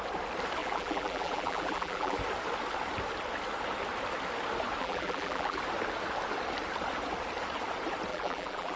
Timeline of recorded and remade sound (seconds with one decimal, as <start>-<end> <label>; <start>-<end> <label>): 0.0-0.6 recorded; 0.6-2.2 remade; 2.2-4.8 recorded; 4.8-5.6 remade; 5.6-8.1 recorded; 8.1-8.8 remade